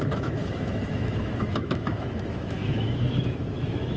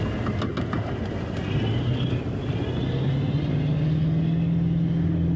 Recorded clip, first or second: second